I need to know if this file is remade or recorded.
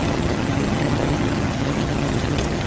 remade